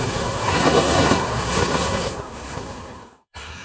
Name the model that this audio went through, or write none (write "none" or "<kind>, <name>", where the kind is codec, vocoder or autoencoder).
codec, SNAC